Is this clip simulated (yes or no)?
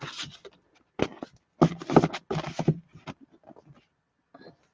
no